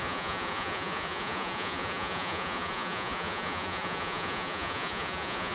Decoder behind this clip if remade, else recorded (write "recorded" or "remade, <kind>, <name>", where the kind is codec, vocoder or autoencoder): remade, vocoder, Vocos